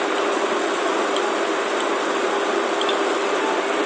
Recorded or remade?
recorded